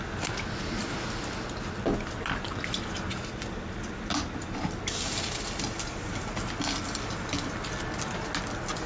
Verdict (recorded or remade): recorded